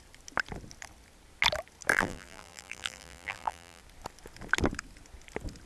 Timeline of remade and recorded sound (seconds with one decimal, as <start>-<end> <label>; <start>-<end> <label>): 0.0-1.9 recorded; 1.9-3.8 remade; 3.8-5.7 recorded